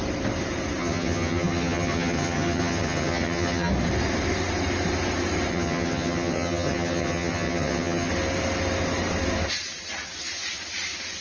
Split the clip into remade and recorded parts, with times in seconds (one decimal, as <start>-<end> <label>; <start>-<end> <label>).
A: 0.0-0.8 recorded; 0.8-3.7 remade; 3.7-5.5 recorded; 5.5-8.1 remade; 8.1-11.2 recorded